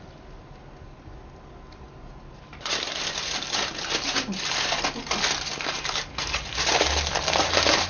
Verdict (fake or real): real